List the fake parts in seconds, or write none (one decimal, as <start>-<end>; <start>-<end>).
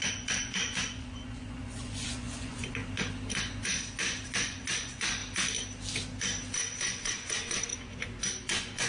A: 0.0-2.8; 3.4-5.2; 6.8-8.9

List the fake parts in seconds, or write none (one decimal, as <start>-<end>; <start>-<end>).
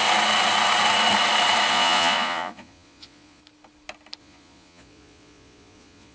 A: 1.7-3.4; 4.2-6.1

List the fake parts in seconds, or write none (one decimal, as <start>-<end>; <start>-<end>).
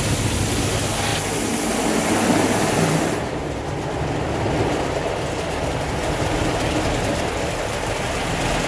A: none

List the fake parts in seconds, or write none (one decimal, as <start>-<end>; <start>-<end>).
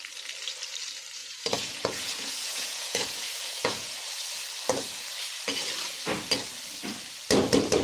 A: 1.2-4.0